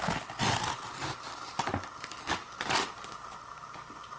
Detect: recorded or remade recorded